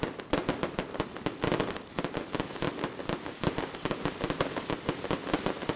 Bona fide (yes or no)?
yes